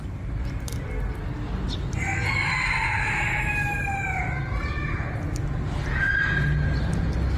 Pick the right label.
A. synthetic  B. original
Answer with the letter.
B